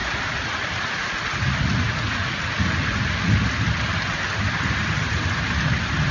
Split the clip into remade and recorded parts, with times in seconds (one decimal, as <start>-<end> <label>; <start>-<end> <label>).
0.0-0.9 remade; 0.9-6.1 recorded